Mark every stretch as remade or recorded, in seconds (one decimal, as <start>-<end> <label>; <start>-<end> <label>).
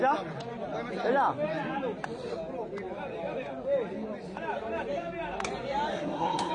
0.0-5.9 recorded; 5.9-6.5 remade